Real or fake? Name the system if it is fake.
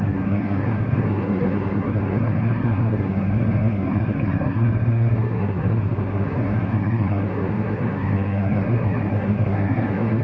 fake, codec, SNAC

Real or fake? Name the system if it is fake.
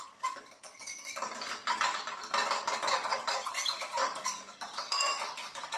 fake, codec, DAC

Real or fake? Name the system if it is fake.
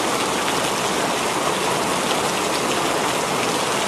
real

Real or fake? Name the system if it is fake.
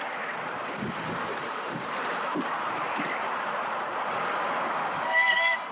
real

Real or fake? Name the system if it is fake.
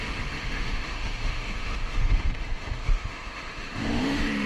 fake, autoencoder, DAC-VAE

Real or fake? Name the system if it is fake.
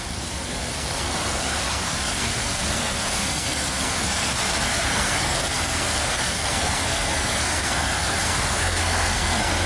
fake, codec, SNAC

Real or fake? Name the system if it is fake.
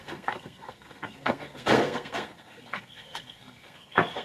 fake, codec, SNAC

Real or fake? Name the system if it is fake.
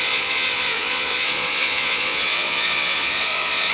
fake, vocoder, Vocos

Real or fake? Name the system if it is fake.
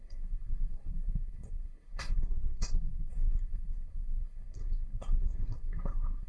fake, codec, SNAC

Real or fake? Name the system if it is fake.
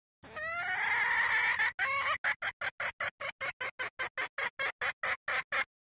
real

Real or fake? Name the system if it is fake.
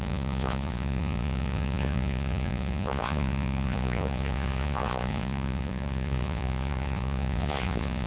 fake, vocoder, Vocos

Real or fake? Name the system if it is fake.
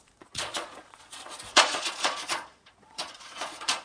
fake, vocoder, Vocos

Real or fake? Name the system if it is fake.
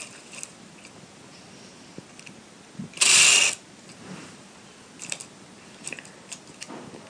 real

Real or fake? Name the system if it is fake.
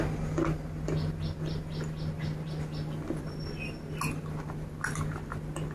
real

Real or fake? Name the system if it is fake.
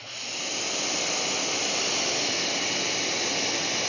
real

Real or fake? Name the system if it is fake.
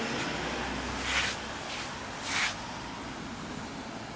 real